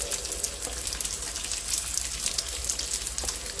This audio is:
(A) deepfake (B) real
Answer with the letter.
B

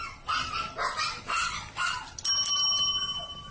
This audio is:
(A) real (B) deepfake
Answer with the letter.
A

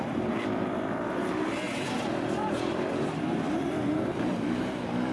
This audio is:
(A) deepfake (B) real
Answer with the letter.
A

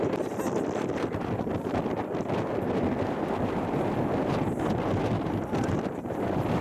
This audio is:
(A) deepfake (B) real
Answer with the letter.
A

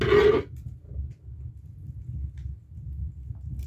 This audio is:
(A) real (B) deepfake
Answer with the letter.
A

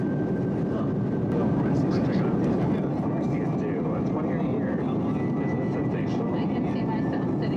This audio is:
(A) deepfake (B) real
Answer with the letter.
B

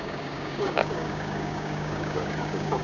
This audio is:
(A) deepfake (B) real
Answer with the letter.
A